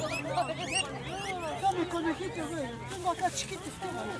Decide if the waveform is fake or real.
real